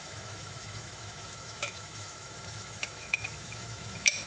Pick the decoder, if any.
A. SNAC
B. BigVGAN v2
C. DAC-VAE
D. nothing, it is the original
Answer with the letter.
C